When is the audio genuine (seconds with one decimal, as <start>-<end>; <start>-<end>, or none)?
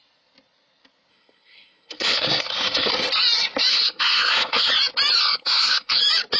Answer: 0.0-1.1; 2.9-3.7; 4.7-5.2; 6.0-6.4